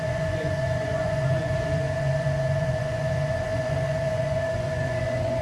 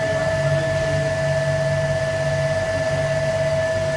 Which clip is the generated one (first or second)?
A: first